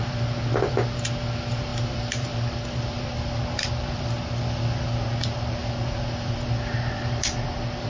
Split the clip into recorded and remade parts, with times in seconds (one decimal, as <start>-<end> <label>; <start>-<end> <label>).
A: 0.0-1.7 recorded; 1.7-6.4 remade; 6.4-7.9 recorded